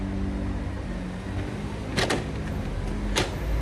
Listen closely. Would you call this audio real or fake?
real